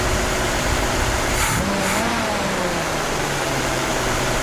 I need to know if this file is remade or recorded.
remade